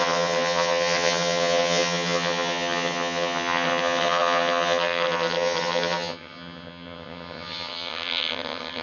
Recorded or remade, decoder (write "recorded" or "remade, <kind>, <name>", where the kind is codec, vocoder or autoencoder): remade, vocoder, HiFi-GAN